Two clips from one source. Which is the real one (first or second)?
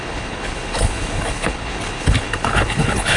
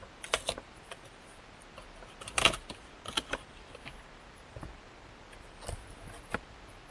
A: second